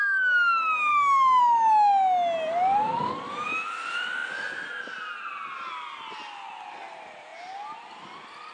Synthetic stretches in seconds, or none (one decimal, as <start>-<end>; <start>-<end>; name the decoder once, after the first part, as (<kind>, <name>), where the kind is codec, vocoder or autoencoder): 0.9-1.4 (autoencoder, DAC-VAE)